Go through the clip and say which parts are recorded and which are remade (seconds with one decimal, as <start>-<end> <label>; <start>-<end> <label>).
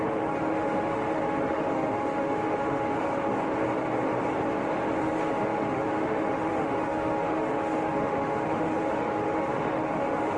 0.0-3.3 remade; 3.3-5.0 recorded; 5.0-10.4 remade